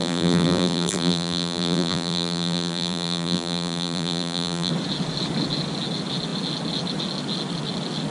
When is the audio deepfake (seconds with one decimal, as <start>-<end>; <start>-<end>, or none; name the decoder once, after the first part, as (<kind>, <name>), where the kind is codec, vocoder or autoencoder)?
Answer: 0.0-4.7 (vocoder, BigVGAN v2)